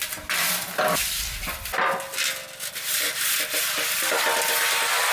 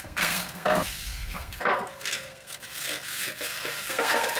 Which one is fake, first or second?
second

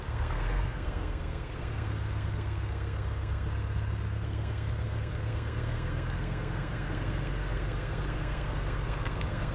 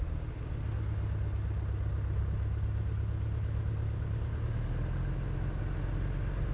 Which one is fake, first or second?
first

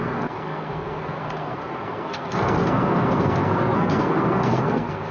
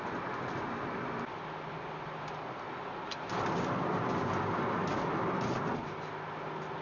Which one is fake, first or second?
first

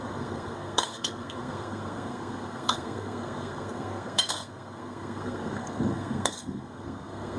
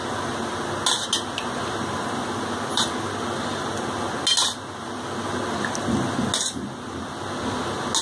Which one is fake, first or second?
first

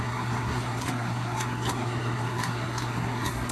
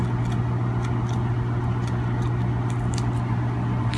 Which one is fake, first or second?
first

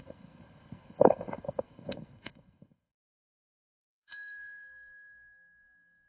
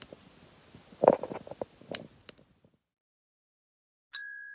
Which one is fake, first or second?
first